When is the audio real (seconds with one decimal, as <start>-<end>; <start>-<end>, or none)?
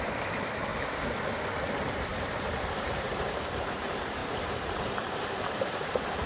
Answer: 0.7-1.5